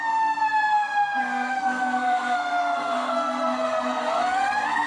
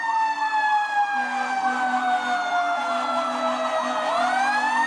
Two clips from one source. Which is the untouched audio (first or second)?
second